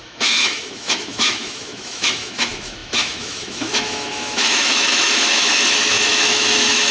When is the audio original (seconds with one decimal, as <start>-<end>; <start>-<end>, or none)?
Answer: none